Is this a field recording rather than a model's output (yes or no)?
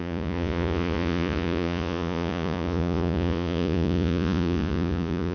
no